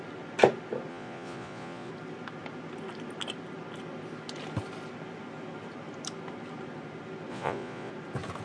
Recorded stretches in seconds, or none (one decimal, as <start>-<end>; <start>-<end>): 0.0-0.9; 1.9-7.3; 7.9-8.4